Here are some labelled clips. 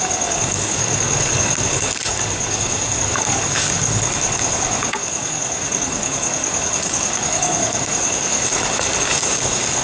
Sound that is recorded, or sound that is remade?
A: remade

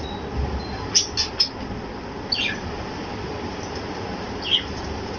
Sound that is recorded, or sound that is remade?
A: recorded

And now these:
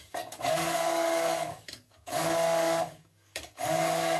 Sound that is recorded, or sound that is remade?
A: remade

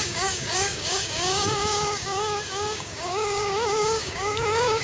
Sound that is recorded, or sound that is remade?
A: remade